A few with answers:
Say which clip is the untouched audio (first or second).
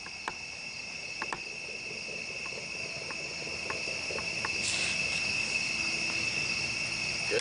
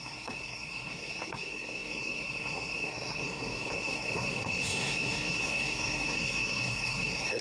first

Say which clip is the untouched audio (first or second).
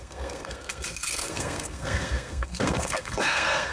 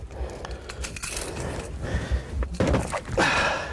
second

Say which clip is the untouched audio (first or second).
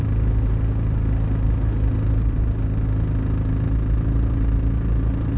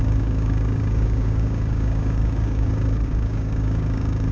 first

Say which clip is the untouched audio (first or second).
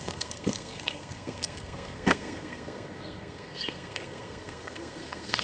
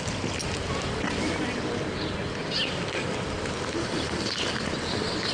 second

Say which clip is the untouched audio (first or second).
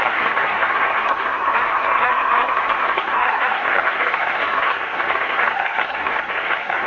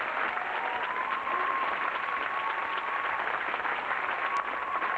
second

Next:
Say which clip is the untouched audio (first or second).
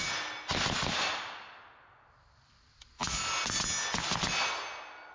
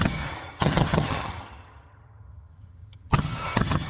first